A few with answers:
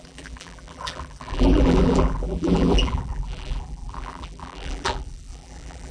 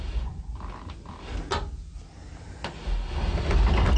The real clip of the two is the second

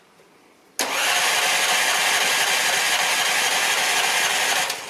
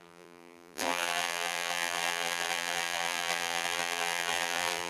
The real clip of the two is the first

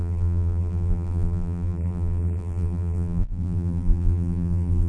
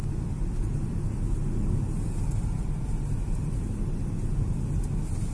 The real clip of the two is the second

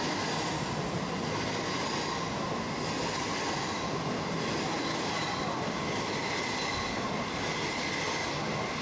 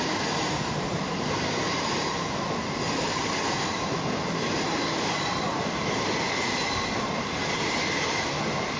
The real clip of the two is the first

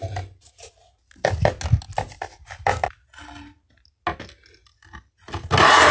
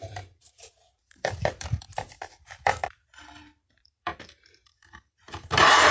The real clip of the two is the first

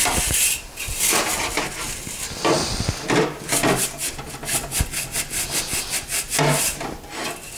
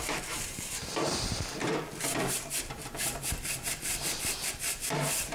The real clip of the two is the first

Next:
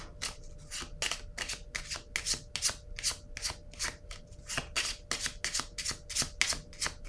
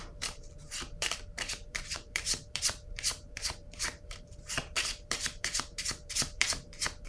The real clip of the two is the first